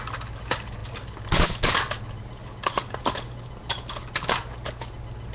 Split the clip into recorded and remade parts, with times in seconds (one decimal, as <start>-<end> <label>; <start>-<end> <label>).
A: 0.0-5.3 recorded